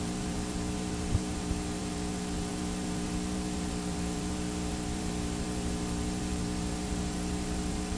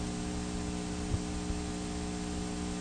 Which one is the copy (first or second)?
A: first